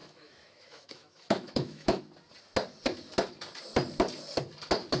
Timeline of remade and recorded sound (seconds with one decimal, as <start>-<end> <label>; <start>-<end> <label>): 0.0-2.0 remade; 2.0-5.0 recorded